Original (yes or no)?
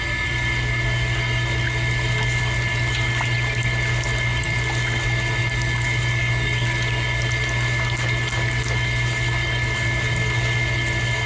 yes